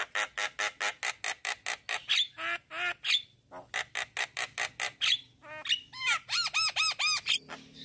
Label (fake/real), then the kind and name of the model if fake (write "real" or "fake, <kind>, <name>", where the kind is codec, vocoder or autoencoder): real